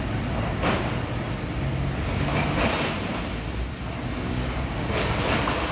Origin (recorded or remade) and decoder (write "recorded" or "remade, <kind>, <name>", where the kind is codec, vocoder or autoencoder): recorded